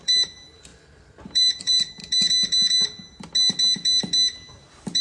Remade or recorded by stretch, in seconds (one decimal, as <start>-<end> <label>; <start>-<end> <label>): 0.0-2.0 remade; 2.0-5.0 recorded